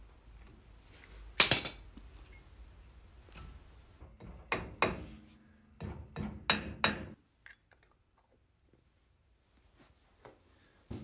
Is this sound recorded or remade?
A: recorded